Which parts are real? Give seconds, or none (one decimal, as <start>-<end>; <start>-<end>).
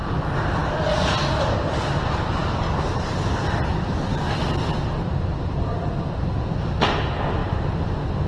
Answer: 0.0-8.3